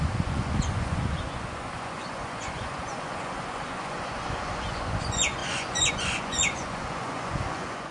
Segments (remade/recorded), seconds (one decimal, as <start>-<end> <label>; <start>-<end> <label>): 0.0-7.9 remade